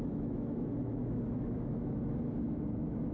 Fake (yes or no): yes